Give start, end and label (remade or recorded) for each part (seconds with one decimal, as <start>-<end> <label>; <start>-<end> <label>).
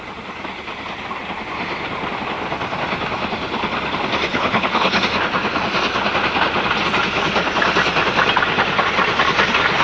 0.0-4.3 recorded; 4.3-5.0 remade; 5.0-9.8 recorded